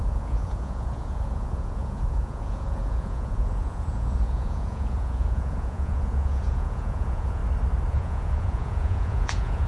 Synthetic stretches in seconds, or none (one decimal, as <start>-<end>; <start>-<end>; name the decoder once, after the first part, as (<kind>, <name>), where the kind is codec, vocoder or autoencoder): 0.0-7.4 (vocoder, Vocos); 7.9-9.7